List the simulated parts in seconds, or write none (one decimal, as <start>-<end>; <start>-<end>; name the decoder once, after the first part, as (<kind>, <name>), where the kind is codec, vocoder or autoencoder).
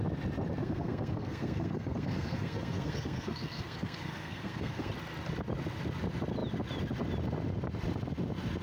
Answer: 0.6-4.9 (codec, SNAC)